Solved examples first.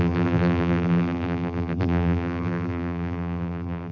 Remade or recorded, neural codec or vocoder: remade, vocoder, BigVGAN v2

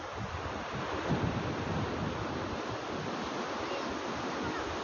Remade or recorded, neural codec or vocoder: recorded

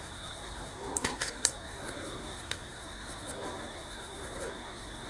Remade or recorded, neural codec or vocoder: remade, codec, SNAC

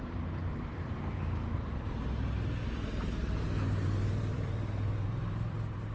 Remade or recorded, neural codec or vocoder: remade, vocoder, BigVGAN v2